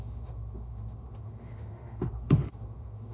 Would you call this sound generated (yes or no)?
yes